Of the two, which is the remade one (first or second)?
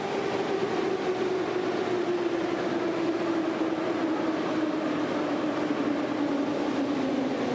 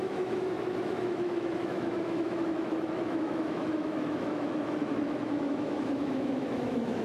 second